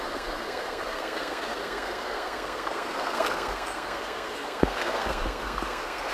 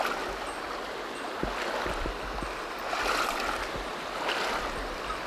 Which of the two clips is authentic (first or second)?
second